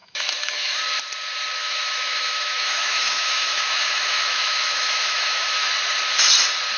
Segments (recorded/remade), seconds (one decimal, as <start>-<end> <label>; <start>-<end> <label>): 0.0-0.8 remade; 0.8-1.6 recorded; 1.6-5.7 remade; 5.7-6.8 recorded